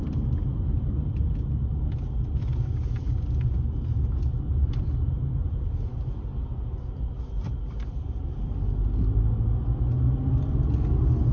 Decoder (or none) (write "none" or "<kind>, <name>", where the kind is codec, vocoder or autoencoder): none